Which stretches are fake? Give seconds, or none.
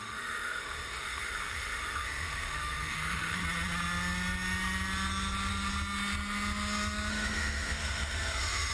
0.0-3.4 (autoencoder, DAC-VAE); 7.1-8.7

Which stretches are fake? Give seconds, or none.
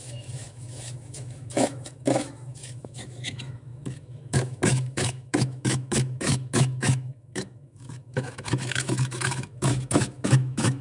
0.0-10.8 (autoencoder, DAC-VAE)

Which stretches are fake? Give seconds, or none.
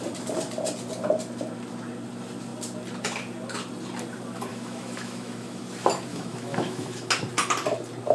4.5-5.6 (autoencoder, DAC-VAE); 6.1-7.1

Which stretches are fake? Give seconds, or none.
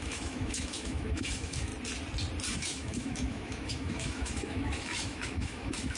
0.0-1.7 (autoencoder, DAC-VAE); 2.6-6.0